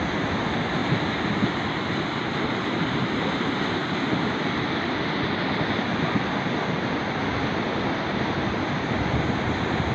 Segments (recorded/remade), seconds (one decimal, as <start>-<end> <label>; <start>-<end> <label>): 0.0-9.9 recorded